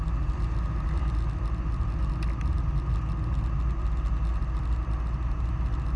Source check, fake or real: real